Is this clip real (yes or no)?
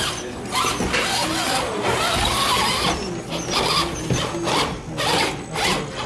yes